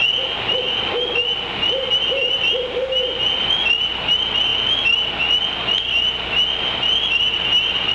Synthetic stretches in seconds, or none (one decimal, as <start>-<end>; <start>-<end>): 2.2-3.6